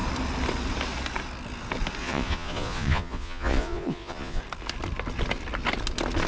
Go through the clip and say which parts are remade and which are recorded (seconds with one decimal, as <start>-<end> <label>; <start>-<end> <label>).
0.0-2.0 recorded; 2.0-4.4 remade; 4.4-6.3 recorded